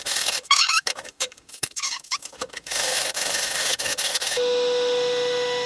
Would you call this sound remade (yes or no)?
yes